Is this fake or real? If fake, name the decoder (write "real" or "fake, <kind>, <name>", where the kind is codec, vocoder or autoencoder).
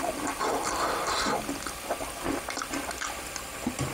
real